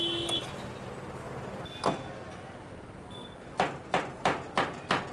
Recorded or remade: recorded